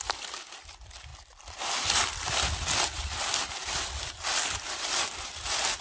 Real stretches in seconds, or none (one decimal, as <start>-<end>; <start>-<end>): none